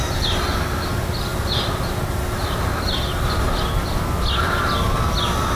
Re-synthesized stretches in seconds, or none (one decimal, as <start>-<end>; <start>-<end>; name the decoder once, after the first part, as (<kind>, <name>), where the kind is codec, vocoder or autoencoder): none